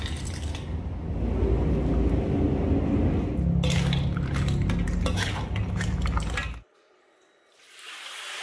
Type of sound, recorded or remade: recorded